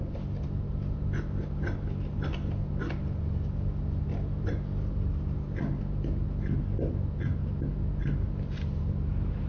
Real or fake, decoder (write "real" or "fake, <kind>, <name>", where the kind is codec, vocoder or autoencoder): real